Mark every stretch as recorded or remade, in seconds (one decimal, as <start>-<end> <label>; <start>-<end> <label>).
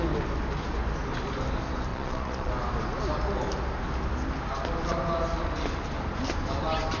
0.0-1.9 recorded; 1.9-2.5 remade; 2.5-7.0 recorded